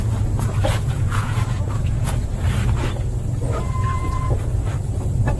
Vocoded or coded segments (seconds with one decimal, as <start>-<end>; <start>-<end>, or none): 0.7-2.2; 4.4-5.4